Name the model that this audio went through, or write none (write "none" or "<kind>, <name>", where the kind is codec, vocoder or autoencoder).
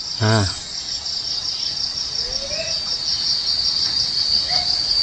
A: none